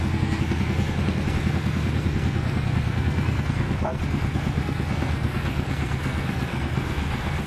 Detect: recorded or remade remade